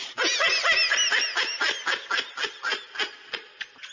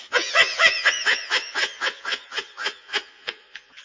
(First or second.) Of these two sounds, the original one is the first